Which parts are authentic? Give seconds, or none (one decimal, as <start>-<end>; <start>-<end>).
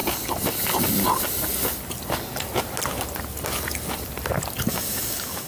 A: 0.0-4.7